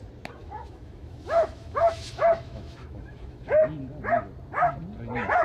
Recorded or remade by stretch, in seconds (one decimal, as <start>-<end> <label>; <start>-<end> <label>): 0.0-0.4 recorded; 0.4-3.6 remade; 3.6-5.4 recorded